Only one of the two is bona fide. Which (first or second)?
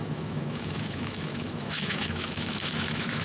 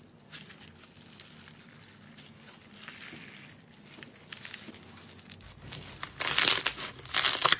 second